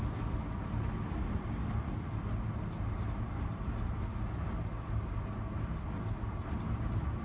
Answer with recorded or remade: recorded